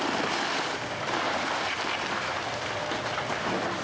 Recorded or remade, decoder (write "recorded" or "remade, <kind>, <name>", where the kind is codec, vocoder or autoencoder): recorded